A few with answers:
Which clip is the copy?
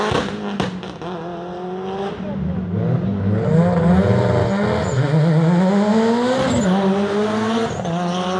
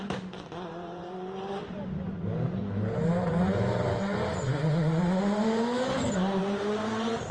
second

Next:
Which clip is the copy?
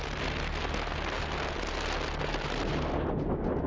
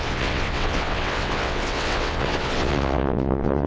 second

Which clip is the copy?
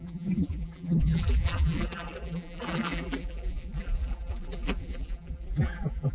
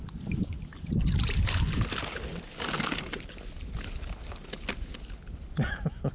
first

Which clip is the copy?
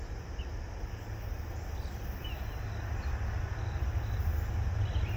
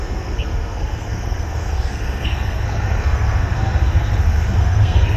second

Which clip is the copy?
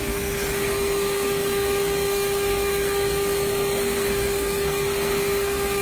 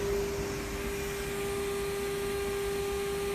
first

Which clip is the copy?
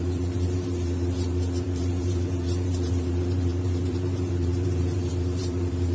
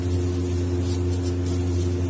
first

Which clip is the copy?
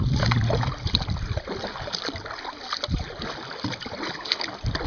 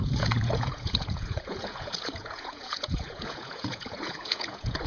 second